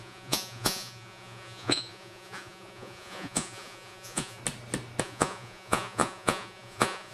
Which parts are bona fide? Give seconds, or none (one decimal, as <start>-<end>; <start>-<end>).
4.4-5.0

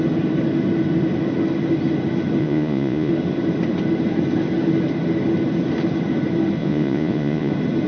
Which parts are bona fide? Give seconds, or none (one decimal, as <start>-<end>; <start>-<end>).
0.0-2.4; 3.1-6.6; 7.5-7.9

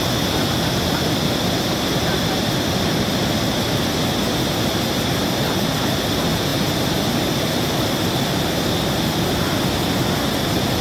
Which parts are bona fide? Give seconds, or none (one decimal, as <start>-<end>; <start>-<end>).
0.0-10.8

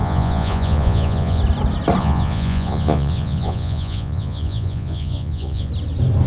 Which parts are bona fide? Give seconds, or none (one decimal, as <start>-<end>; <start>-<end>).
1.4-2.0; 5.7-6.3

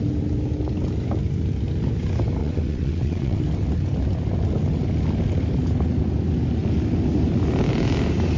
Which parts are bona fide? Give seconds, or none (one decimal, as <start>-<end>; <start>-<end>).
0.0-2.4; 3.4-8.4

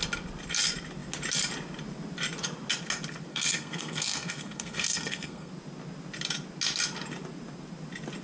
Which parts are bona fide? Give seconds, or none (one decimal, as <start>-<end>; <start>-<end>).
0.0-3.3; 5.5-8.2

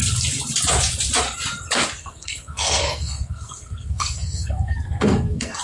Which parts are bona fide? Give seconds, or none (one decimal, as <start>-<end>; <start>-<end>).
0.0-2.0

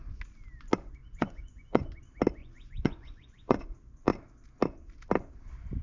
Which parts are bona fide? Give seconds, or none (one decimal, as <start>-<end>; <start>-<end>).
0.0-1.0; 1.8-2.4; 3.6-5.8